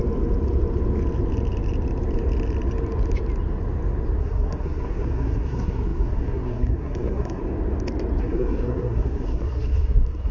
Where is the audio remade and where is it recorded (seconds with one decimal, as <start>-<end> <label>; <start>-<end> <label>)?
0.0-4.2 recorded; 4.2-7.4 remade; 7.4-8.2 recorded; 8.2-10.3 remade

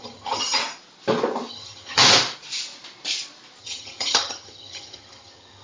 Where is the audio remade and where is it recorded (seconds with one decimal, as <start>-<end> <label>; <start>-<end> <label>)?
0.0-0.6 remade; 0.6-1.5 recorded; 1.5-2.0 remade; 2.0-3.6 recorded; 3.6-5.6 remade

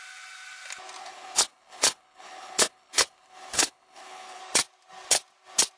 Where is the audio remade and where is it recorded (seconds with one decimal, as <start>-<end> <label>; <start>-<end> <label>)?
0.0-1.0 recorded; 1.0-4.4 remade; 4.4-5.8 recorded

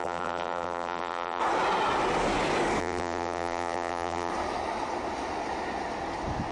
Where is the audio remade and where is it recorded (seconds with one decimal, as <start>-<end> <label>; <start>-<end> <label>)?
0.0-1.4 remade; 1.4-2.8 recorded; 2.8-4.3 remade; 4.3-6.5 recorded

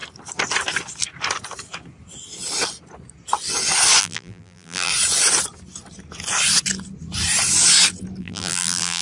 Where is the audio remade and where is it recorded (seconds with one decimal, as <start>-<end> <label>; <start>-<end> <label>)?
0.0-4.0 recorded; 4.0-4.9 remade; 4.9-8.2 recorded; 8.2-9.0 remade